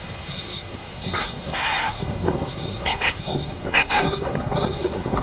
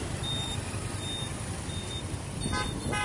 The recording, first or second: second